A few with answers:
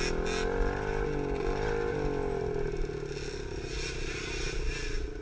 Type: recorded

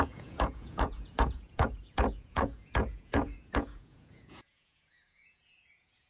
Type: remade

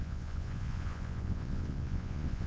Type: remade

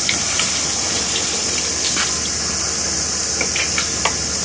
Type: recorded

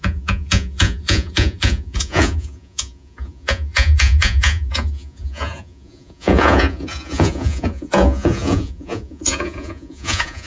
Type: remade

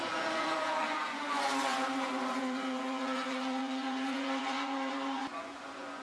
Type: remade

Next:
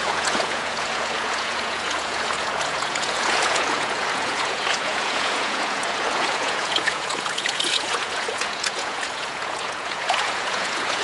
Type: remade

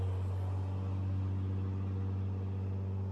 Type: recorded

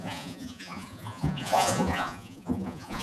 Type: remade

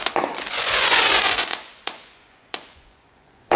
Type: remade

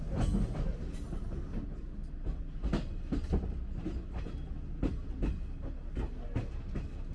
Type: recorded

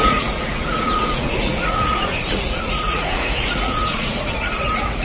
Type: remade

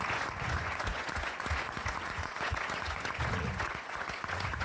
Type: remade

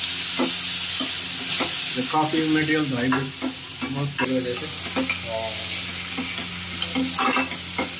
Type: recorded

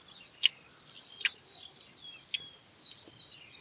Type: recorded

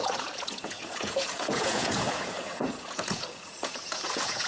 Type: remade